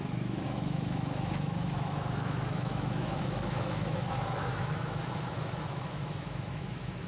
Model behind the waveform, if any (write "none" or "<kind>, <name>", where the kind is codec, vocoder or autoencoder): autoencoder, DAC-VAE